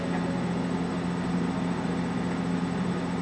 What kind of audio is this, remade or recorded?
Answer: recorded